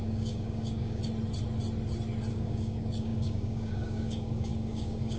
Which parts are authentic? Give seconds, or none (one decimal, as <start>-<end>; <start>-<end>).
1.0-2.3